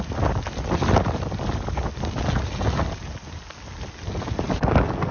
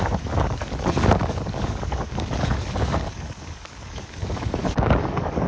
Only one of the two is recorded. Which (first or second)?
first